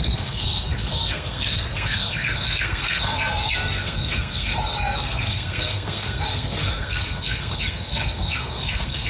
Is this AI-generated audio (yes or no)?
yes